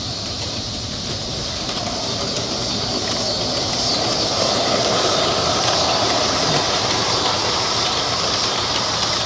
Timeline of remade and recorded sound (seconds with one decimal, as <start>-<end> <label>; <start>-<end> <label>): 0.0-2.6 remade; 2.6-4.3 recorded; 4.3-9.3 remade